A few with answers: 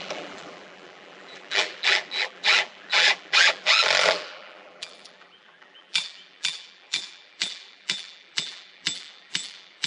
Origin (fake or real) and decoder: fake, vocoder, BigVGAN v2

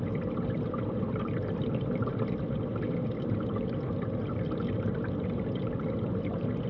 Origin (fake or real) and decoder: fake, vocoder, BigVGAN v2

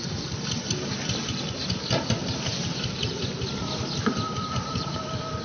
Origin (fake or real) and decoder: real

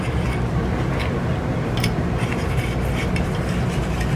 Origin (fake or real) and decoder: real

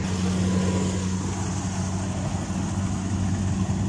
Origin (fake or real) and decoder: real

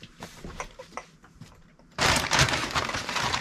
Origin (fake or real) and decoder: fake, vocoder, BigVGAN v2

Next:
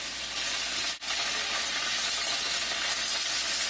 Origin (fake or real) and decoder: real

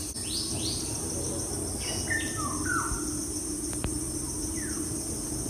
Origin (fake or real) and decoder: real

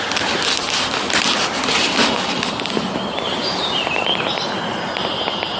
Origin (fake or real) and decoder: real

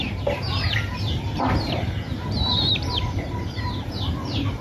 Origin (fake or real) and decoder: fake, vocoder, BigVGAN v2